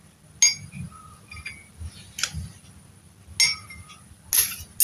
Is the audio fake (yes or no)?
no